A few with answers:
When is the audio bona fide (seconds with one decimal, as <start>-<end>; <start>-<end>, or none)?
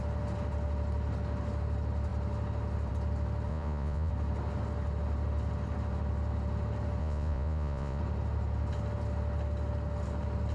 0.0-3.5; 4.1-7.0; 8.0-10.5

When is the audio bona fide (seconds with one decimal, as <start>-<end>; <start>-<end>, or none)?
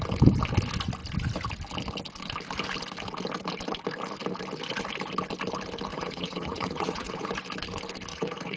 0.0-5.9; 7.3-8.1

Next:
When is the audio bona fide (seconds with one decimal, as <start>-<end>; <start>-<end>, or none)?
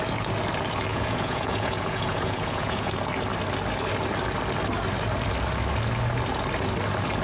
0.0-0.9; 2.9-7.2